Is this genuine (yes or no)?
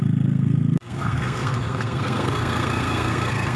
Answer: no